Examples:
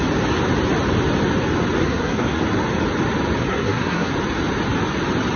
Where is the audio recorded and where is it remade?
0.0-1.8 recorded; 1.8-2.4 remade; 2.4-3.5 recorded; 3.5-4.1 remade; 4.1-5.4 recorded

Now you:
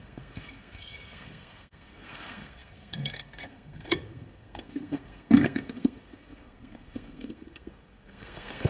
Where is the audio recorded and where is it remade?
0.0-8.7 remade

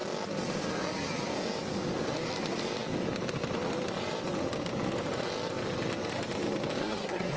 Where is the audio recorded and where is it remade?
0.0-6.8 recorded; 6.8-7.4 remade